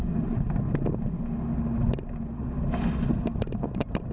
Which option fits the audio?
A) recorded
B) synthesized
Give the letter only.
A